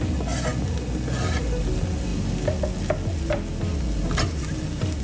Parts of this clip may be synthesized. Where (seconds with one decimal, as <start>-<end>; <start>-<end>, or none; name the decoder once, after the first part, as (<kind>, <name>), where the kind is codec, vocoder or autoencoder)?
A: none